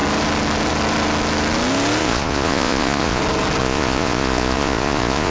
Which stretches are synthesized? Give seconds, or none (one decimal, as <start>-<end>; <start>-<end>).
2.0-3.2; 3.6-5.3

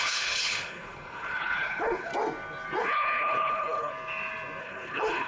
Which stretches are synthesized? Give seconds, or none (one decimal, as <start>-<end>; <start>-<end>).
0.0-2.1; 2.8-3.9; 4.6-5.3

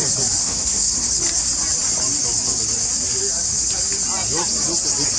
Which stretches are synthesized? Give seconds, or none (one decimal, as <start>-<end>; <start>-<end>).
0.4-1.1

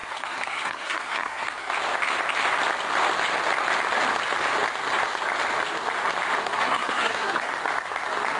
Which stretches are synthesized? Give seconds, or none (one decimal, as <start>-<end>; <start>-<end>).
0.0-1.7; 6.4-7.5

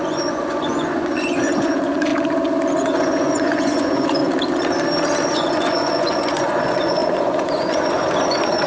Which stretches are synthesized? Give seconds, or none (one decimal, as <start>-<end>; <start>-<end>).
0.0-2.1; 2.7-4.2; 5.3-8.7

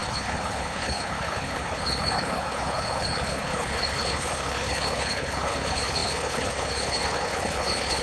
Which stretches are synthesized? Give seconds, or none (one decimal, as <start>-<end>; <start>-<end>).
0.0-8.0